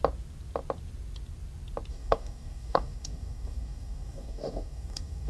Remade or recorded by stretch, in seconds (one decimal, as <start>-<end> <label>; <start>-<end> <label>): 0.0-1.9 recorded; 1.9-5.3 remade